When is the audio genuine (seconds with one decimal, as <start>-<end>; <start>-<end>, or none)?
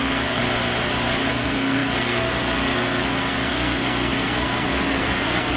0.4-1.3